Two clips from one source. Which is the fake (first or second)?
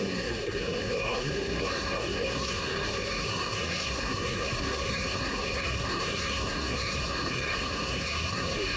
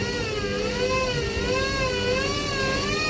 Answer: first